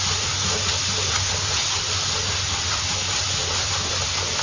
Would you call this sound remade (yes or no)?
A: no